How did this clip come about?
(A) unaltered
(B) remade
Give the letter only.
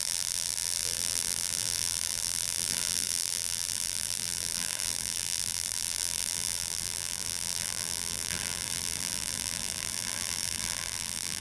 B